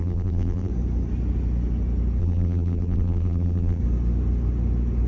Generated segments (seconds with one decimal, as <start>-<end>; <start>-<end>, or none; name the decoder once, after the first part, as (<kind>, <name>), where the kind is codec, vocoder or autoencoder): 0.0-0.7 (vocoder, BigVGAN v2); 2.2-3.8